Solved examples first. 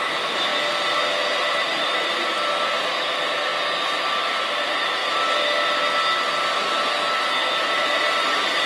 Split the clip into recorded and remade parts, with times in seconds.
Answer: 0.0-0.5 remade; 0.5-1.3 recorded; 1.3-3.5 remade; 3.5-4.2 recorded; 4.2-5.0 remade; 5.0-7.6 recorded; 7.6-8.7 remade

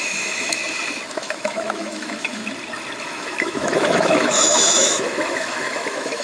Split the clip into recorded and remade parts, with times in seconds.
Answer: 0.0-0.6 remade; 0.6-1.1 recorded; 1.1-2.4 remade; 2.4-3.0 recorded; 3.0-6.2 remade

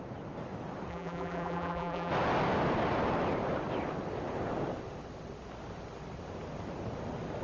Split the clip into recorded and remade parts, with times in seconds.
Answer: 0.0-0.9 recorded; 0.9-2.1 remade; 2.1-7.4 recorded

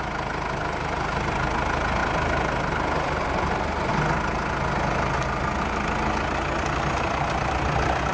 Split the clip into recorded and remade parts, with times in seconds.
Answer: 0.0-8.1 recorded

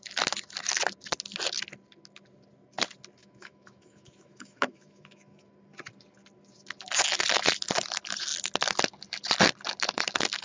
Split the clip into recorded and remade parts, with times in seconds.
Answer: 0.0-3.2 recorded; 3.2-5.5 remade; 5.5-10.4 recorded

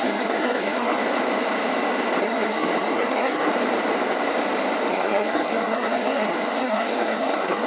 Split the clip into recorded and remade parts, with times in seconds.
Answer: 0.0-1.0 remade; 1.0-2.2 recorded; 2.2-3.5 remade; 3.5-4.9 recorded; 4.9-7.7 remade